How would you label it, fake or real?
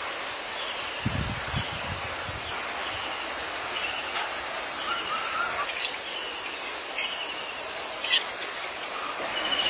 real